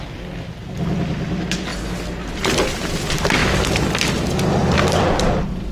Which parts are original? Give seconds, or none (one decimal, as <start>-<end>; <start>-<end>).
1.7-2.3; 3.4-4.5